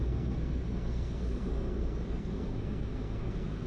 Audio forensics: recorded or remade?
remade